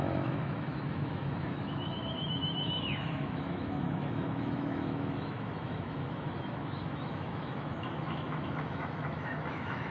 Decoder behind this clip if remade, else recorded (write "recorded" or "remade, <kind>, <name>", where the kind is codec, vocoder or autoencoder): remade, autoencoder, DAC-VAE